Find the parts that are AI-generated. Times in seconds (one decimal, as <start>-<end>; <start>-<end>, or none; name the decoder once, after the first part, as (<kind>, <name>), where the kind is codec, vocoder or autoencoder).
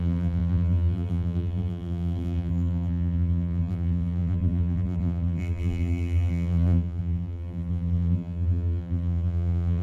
0.0-9.8 (vocoder, BigVGAN v2)